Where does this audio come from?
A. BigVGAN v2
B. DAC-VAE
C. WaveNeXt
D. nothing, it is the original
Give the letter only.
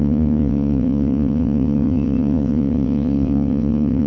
C